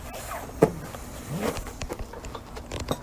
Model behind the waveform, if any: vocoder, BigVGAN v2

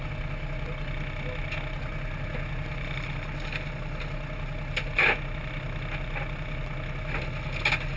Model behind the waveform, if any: none